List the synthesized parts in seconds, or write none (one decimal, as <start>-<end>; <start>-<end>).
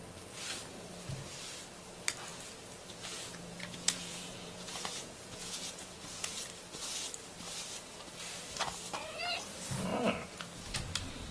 3.4-6.4